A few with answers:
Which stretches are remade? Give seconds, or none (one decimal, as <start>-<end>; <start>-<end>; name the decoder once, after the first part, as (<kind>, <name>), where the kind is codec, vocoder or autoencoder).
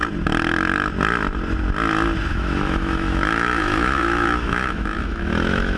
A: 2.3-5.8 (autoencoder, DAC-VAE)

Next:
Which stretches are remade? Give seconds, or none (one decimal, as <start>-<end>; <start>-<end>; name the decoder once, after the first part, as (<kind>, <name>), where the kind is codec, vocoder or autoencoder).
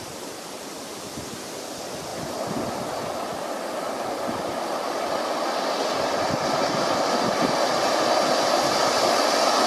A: none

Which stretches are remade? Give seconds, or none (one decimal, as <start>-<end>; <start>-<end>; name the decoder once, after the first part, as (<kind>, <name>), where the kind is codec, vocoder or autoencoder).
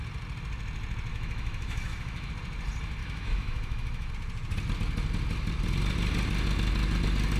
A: 1.1-2.3 (autoencoder, DAC-VAE); 3.0-4.1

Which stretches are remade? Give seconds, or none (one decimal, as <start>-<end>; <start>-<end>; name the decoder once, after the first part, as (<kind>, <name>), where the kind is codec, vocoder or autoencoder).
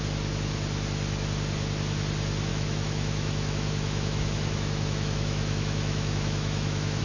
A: 2.5-7.0 (autoencoder, DAC-VAE)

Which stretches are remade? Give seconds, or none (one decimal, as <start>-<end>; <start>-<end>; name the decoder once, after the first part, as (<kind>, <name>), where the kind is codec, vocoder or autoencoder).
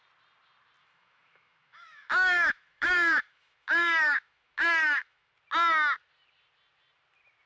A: 0.8-5.3 (autoencoder, DAC-VAE)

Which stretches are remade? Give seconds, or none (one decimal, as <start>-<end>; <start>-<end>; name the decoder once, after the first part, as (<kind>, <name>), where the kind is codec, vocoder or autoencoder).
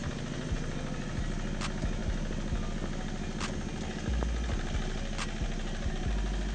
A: none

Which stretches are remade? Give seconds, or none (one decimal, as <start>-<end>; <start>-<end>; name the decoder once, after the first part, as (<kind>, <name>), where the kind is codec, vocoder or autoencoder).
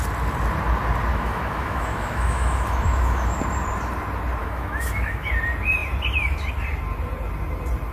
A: 1.1-3.4 (autoencoder, DAC-VAE); 4.4-5.3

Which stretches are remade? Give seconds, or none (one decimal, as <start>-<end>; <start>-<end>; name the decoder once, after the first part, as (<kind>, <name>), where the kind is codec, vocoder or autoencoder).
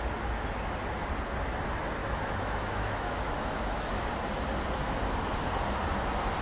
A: 2.0-4.1 (autoencoder, DAC-VAE)